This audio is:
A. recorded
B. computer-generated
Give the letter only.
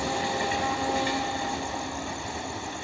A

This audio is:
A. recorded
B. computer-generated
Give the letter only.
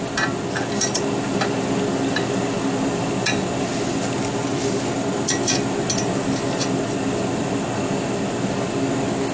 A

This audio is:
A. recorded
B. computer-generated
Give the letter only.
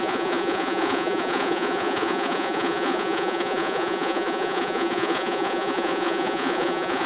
B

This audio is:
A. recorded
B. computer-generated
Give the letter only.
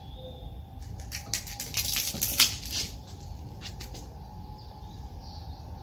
A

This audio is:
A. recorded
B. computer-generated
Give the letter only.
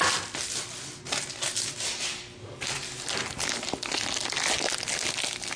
A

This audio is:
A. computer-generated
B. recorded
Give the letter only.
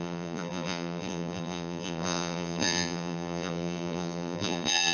A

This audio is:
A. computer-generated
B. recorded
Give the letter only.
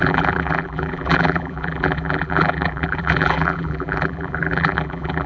A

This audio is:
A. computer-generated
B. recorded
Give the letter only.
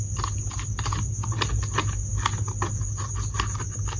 B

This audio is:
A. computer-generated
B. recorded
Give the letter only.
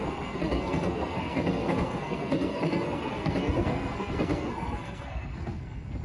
A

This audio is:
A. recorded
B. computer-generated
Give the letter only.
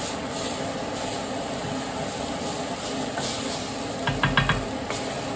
A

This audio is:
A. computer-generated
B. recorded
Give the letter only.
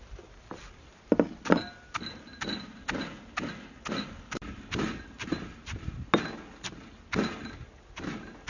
B